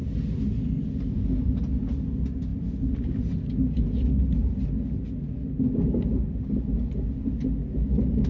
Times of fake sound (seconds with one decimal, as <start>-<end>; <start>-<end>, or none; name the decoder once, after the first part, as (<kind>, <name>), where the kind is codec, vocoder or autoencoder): none